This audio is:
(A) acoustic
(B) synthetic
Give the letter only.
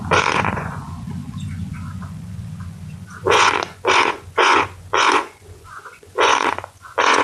B